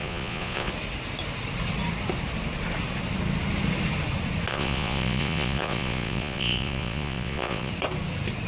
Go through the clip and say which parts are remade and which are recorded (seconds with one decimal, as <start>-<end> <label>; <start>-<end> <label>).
0.0-0.7 remade; 0.7-4.5 recorded; 4.5-7.7 remade; 7.7-8.5 recorded